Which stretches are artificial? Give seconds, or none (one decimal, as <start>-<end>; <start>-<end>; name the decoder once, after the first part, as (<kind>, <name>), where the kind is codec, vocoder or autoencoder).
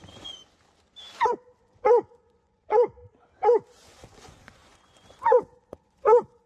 0.0-0.4 (vocoder, Vocos); 1.6-3.0; 3.7-6.5